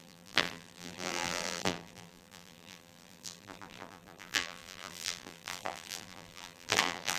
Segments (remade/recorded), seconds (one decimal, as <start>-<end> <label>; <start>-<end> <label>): 0.0-7.2 remade